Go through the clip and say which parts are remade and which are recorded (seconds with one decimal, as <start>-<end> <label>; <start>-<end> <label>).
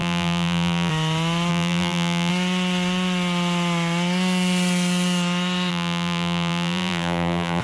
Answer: 0.0-0.9 remade; 0.9-1.5 recorded; 1.5-2.3 remade; 2.3-5.7 recorded; 5.7-7.6 remade